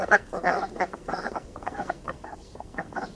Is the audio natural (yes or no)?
no